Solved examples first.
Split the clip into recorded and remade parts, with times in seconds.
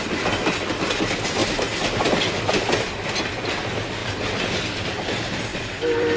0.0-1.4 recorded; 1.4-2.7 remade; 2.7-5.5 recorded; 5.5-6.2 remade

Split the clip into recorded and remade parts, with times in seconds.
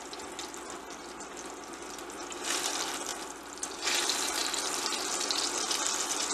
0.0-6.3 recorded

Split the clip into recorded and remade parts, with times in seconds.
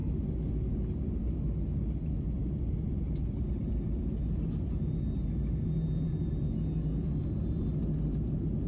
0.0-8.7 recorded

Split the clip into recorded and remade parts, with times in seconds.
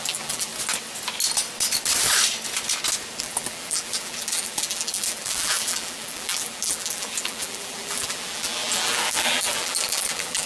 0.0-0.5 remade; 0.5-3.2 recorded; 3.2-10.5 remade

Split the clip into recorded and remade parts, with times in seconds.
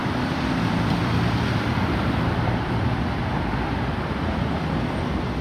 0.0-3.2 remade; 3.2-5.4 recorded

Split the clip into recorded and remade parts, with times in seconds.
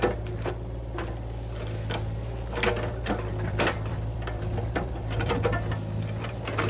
0.0-3.3 recorded; 3.3-5.3 remade; 5.3-6.7 recorded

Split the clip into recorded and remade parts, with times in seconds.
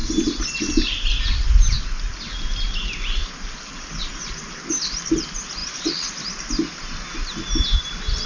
0.0-8.3 recorded